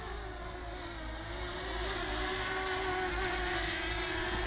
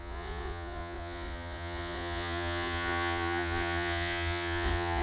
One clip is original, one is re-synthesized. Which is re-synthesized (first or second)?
second